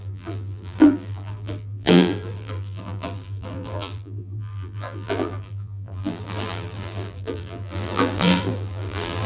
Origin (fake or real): fake